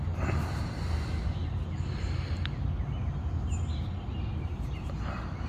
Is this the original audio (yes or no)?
yes